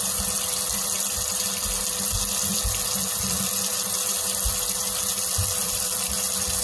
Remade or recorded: recorded